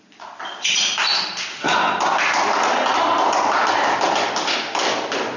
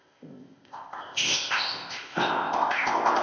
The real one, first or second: first